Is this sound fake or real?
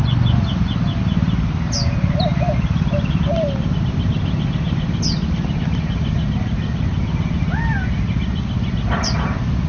real